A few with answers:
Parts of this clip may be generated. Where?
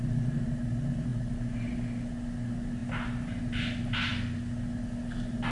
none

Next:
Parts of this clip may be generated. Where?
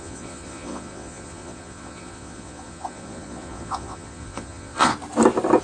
0.0-4.9 (vocoder, Vocos)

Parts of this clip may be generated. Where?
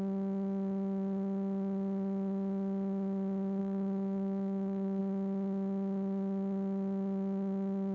3.6-5.0 (codec, DAC)